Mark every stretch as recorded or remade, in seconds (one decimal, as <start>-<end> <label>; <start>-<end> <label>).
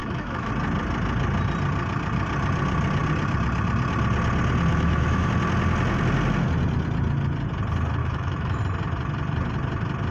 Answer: 0.0-0.5 remade; 0.5-4.7 recorded; 4.7-5.3 remade; 5.3-8.0 recorded; 8.0-8.6 remade; 8.6-10.1 recorded